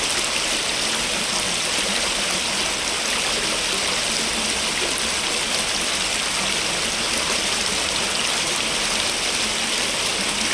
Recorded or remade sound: recorded